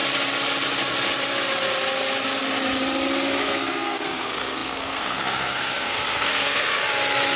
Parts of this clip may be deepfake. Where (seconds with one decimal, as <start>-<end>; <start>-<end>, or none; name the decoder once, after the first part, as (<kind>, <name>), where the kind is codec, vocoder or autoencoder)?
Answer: 3.4-6.7 (codec, SNAC)